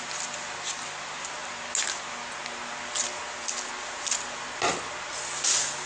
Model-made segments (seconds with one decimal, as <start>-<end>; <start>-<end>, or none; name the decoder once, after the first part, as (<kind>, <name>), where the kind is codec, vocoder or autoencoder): none